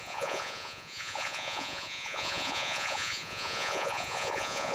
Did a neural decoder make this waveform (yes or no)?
yes